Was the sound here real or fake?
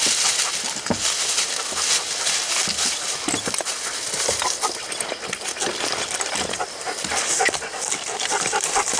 real